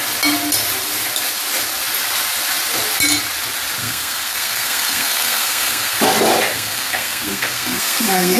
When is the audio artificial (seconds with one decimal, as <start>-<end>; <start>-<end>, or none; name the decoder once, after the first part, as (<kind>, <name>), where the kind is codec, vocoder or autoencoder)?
3.8-6.0 (codec, SNAC); 6.5-8.4